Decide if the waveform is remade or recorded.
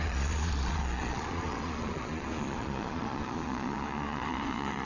remade